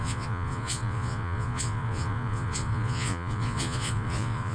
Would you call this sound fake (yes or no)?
yes